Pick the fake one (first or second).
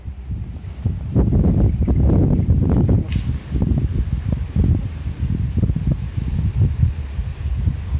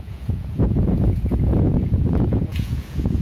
second